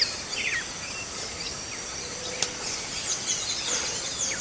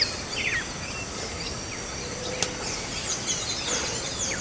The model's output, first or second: first